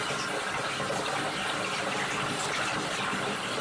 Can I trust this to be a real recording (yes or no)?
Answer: yes